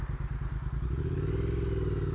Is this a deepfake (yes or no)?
no